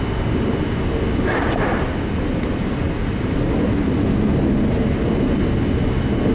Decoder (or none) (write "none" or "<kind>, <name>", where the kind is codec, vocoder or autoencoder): none